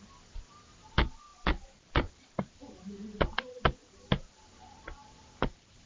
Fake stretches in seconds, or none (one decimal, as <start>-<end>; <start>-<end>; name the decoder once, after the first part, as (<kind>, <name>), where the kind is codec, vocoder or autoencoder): none